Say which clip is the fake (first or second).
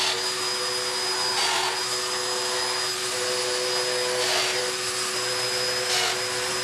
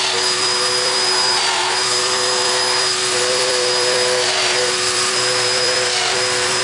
second